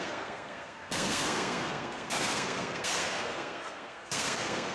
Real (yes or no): no